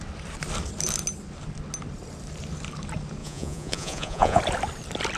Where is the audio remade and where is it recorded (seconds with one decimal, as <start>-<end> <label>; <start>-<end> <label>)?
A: 0.0-3.2 recorded; 3.2-4.4 remade; 4.4-5.2 recorded